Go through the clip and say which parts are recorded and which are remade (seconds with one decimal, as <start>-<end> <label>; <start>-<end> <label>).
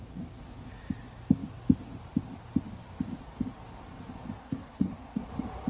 0.0-4.4 recorded; 4.4-5.3 remade; 5.3-5.7 recorded